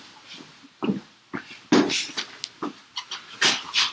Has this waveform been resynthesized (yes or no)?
no